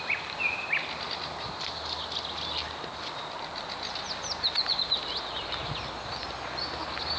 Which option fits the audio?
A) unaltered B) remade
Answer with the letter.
A